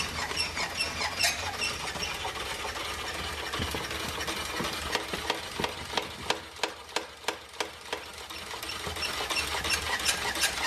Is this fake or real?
real